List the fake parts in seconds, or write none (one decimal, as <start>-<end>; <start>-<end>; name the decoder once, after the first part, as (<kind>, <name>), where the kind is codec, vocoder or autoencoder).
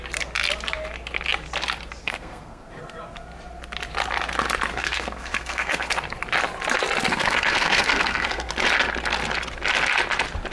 2.0-2.7 (codec, SNAC); 4.7-5.9; 7.1-8.5